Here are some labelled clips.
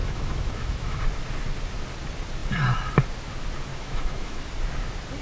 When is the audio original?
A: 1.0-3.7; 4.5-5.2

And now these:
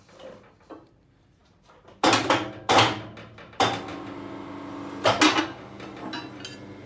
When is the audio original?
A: 0.0-6.9

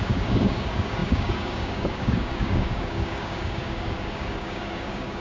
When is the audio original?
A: none

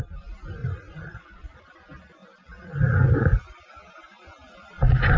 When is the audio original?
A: 0.0-0.6; 1.7-5.2